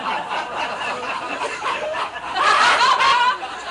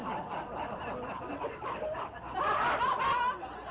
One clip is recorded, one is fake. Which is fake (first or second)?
first